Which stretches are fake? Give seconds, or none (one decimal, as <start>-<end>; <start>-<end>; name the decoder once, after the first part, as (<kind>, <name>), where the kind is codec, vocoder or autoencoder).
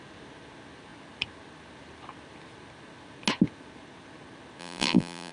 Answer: 4.6-5.3 (vocoder, BigVGAN v2)